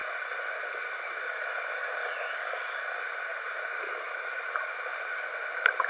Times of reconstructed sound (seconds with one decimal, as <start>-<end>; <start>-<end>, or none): 2.0-2.8